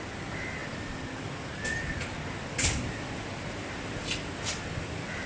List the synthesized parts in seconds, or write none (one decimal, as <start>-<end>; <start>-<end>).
none